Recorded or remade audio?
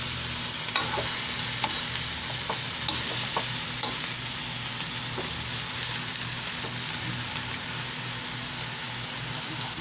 recorded